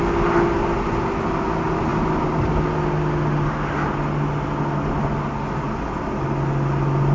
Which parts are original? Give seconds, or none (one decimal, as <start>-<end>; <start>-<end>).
0.0-7.1